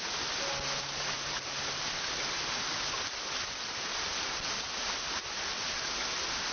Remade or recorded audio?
recorded